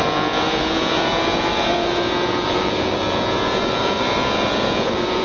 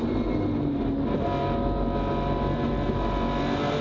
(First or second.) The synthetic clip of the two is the first